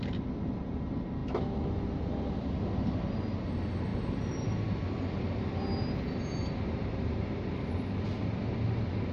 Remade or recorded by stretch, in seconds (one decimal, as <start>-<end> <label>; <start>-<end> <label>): 0.0-9.1 recorded